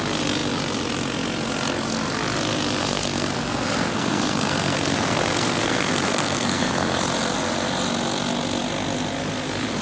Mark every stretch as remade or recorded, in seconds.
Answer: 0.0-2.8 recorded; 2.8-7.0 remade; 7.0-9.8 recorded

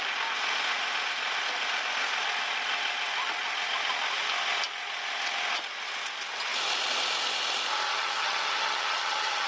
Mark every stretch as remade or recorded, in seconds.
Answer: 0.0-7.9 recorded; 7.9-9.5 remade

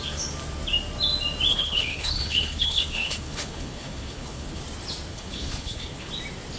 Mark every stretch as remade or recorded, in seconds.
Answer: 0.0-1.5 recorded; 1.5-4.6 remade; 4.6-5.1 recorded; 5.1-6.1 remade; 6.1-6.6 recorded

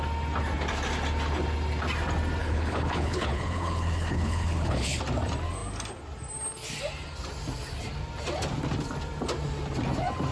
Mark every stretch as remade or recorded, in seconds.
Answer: 0.0-2.4 recorded; 2.4-5.0 remade; 5.0-10.3 recorded